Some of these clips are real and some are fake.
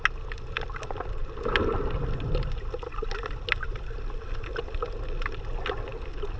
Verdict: real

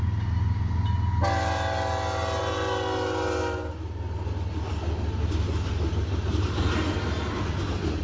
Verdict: real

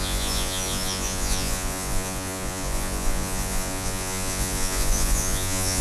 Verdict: fake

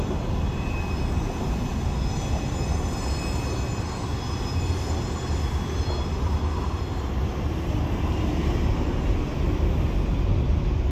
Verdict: real